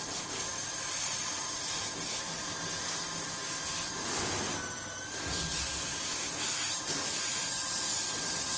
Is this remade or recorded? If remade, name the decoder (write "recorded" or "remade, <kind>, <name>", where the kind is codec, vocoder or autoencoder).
recorded